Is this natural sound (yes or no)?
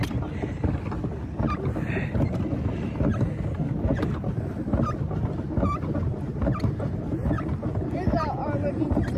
yes